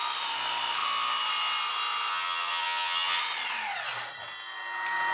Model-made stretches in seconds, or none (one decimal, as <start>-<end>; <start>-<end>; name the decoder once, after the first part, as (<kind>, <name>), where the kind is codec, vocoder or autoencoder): 2.1-3.2 (vocoder, HiFi-GAN)